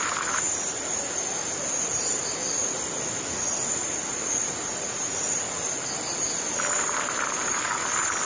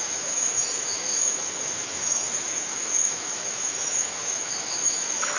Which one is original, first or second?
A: first